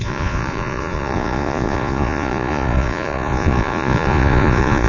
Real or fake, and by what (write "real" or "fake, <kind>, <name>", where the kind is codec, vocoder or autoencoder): fake, vocoder, Vocos